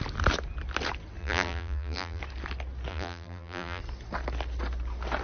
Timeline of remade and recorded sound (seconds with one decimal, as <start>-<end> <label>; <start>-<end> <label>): 0.0-1.2 recorded; 1.2-2.2 remade; 2.2-2.9 recorded; 2.9-3.8 remade; 3.8-5.2 recorded